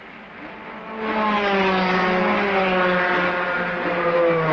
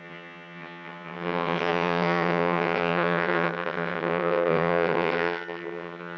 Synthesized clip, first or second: second